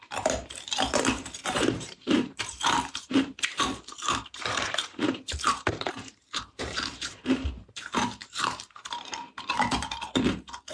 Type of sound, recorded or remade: remade